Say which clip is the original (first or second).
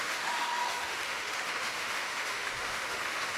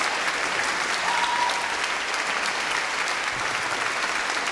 second